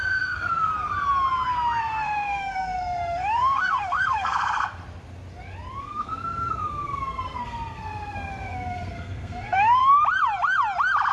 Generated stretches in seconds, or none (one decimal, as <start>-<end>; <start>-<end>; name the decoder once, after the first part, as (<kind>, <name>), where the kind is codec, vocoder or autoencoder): 0.0-0.7 (codec, SNAC); 1.8-4.8; 5.8-9.8